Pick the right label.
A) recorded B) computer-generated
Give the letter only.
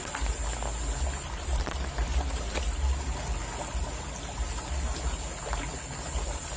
A